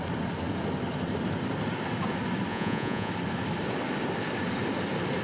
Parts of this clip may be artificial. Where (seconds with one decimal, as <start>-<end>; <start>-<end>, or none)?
2.5-3.1